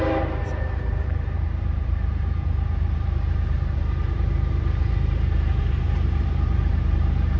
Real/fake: fake